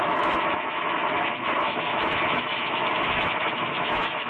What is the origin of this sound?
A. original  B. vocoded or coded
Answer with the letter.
B